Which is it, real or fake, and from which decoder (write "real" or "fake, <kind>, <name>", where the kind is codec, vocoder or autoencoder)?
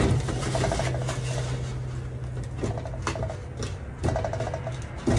real